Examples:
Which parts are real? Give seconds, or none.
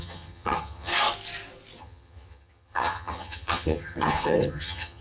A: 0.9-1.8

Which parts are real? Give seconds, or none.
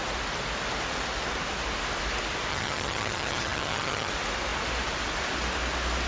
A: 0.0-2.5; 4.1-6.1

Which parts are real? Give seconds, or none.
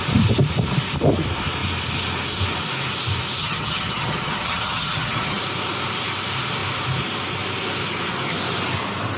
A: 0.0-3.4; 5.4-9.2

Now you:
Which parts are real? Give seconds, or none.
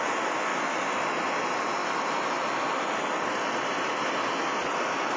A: 0.0-5.2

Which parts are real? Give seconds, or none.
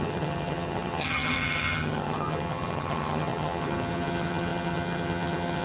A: none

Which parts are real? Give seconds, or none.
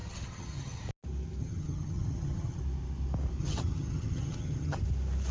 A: 0.8-1.4; 2.6-3.4; 4.8-5.3